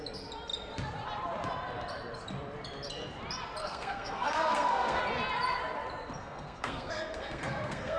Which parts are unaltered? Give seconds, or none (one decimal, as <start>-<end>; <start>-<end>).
0.0-3.6; 5.0-6.2